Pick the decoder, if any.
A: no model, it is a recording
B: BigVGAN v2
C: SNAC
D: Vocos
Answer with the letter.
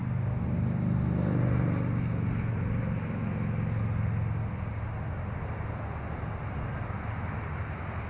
A